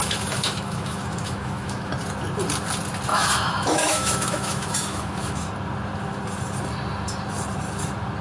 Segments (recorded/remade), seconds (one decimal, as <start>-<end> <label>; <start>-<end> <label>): 0.0-1.9 remade; 1.9-3.1 recorded; 3.1-5.5 remade; 5.5-8.2 recorded